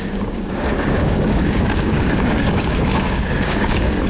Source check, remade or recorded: remade